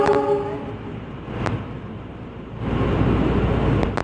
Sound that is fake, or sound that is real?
real